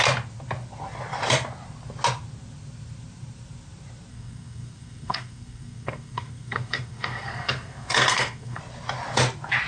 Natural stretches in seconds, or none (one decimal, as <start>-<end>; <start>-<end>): 0.0-4.1; 8.6-9.7